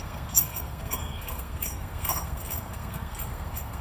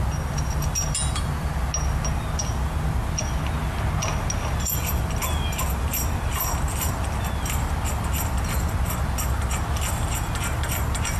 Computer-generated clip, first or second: first